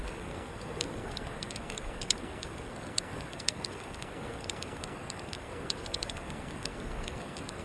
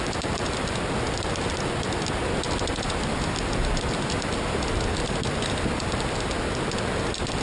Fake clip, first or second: first